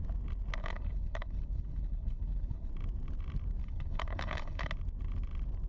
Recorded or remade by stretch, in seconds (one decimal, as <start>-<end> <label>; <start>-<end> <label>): 0.0-0.6 recorded; 0.6-2.7 remade; 2.7-3.6 recorded; 3.6-4.7 remade; 4.7-5.7 recorded